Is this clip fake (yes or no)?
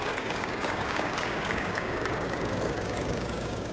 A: yes